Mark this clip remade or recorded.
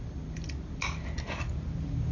recorded